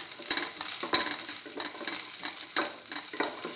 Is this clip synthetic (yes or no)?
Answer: yes